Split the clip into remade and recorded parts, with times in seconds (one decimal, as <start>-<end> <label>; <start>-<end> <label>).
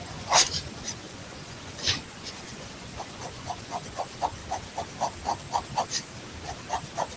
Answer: 0.0-4.4 remade; 4.4-7.2 recorded